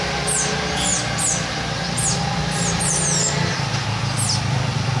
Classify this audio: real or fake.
real